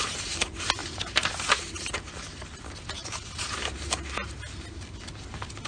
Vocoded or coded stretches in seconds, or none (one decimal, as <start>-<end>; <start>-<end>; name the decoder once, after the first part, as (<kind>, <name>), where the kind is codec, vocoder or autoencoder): 0.8-2.1 (vocoder, BigVGAN v2); 3.0-4.4